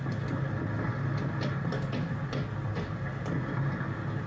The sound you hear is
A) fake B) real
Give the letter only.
B